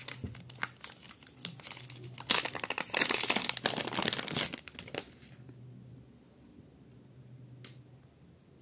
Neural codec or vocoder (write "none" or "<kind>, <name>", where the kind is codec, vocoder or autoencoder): none